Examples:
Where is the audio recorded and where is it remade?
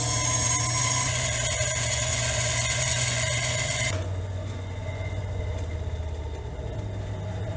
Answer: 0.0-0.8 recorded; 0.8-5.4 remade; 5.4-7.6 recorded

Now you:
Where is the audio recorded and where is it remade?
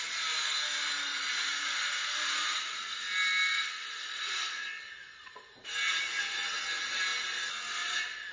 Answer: 0.0-1.1 recorded; 1.1-2.8 remade; 2.8-3.5 recorded; 3.5-4.6 remade; 4.6-5.0 recorded; 5.0-6.6 remade; 6.6-8.3 recorded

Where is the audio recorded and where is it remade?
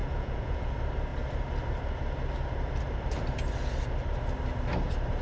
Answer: 0.0-0.7 remade; 0.7-5.2 recorded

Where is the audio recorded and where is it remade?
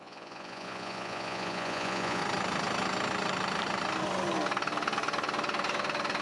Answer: 0.0-2.2 remade; 2.2-6.2 recorded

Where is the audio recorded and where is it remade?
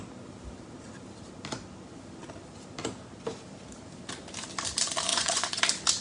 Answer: 0.0-5.1 recorded; 5.1-5.6 remade; 5.6-6.0 recorded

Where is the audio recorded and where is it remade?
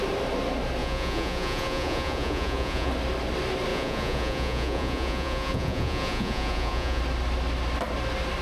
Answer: 0.0-0.8 recorded; 0.8-2.9 remade; 2.9-3.7 recorded; 3.7-7.0 remade; 7.0-8.4 recorded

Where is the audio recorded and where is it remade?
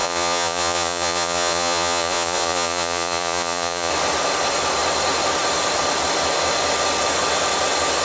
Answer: 0.0-3.9 remade; 3.9-8.0 recorded